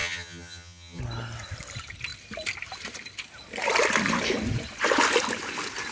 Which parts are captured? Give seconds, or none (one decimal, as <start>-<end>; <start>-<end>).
1.0-5.9